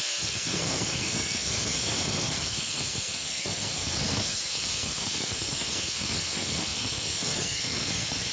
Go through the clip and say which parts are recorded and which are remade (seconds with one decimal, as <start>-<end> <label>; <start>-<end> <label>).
0.0-8.3 remade